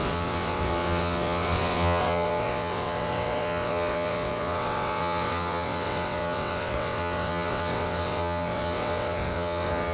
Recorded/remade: remade